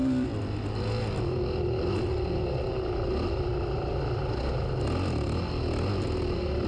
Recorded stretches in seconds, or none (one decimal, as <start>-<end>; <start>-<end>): 0.0-6.7